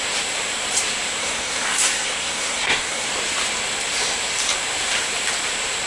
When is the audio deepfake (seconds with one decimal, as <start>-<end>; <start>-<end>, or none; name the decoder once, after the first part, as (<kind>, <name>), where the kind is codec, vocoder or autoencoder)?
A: 1.2-3.1 (codec, SNAC)